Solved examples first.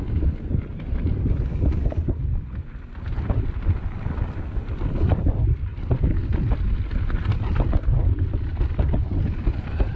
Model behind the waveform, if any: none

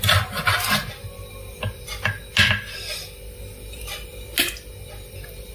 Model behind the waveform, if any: none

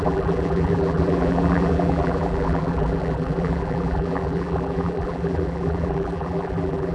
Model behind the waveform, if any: vocoder, BigVGAN v2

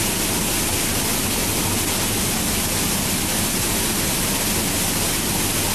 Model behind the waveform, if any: none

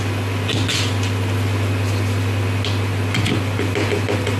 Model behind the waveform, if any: none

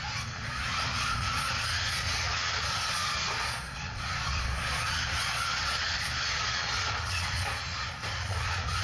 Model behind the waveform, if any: vocoder, Vocos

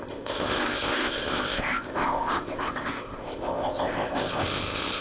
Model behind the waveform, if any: codec, ZipCodec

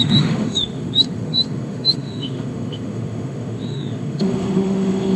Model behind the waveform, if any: autoencoder, DAC-VAE